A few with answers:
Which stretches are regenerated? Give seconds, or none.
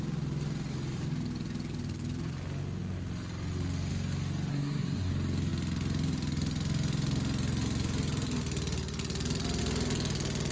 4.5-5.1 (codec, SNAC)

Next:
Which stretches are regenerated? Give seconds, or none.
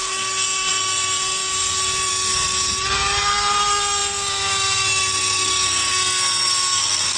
0.0-7.2 (codec, SNAC)